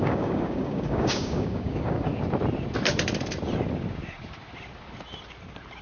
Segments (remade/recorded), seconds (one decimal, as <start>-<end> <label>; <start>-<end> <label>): 0.0-2.1 remade; 2.1-5.8 recorded